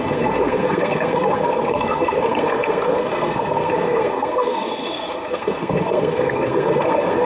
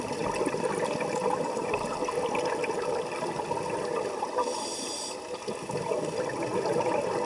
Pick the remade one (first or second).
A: first